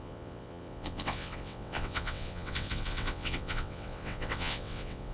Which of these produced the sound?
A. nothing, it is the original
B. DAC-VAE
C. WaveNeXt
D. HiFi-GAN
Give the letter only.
C